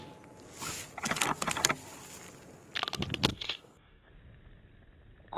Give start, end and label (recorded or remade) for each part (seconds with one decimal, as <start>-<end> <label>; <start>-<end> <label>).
0.0-3.3 recorded; 3.3-4.1 remade; 4.1-5.4 recorded

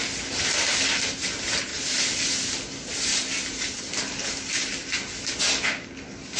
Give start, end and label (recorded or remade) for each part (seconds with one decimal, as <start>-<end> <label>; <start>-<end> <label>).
0.0-1.7 recorded; 1.7-2.5 remade; 2.5-3.1 recorded; 3.1-4.7 remade; 4.7-6.4 recorded